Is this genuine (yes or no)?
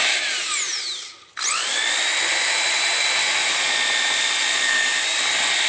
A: yes